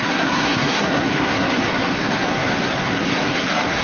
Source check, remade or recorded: remade